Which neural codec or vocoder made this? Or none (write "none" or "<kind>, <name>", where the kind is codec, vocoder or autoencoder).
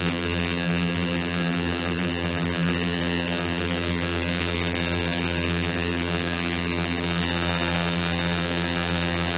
vocoder, BigVGAN v2